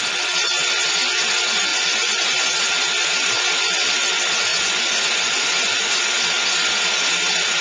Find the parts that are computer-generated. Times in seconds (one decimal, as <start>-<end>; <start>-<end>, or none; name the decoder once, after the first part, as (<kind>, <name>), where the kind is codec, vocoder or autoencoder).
1.7-2.7 (vocoder, Vocos); 4.5-6.0